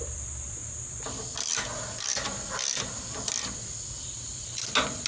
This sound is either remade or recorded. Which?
remade